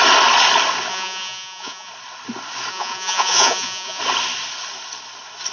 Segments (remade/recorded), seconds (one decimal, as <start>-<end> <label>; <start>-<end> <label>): 0.0-0.9 recorded; 0.9-1.9 remade; 1.9-2.7 recorded; 2.7-4.0 remade; 4.0-5.5 recorded